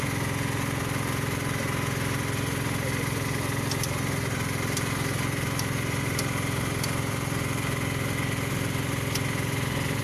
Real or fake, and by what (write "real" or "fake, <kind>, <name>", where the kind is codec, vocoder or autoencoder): real